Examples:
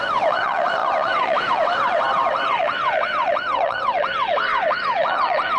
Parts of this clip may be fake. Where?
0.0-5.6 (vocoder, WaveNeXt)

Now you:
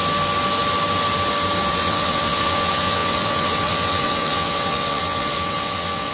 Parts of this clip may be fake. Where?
1.7-6.1 (vocoder, WaveNeXt)

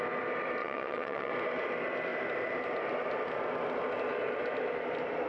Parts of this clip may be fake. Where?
0.6-1.3 (vocoder, WaveNeXt)

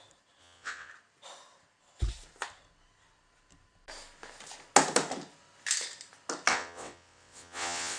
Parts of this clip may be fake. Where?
0.4-0.9 (vocoder, WaveNeXt); 6.5-8.0

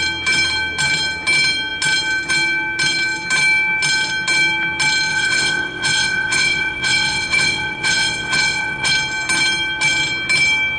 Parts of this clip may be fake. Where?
5.1-8.9 (vocoder, WaveNeXt)